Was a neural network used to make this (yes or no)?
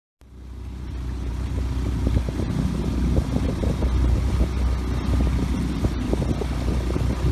no